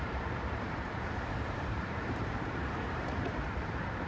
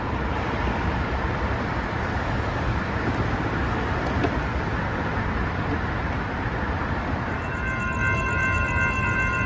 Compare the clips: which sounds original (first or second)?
second